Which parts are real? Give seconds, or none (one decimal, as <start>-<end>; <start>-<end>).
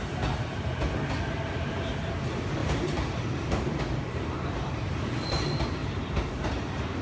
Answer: 0.0-2.6; 5.1-5.8; 6.5-7.0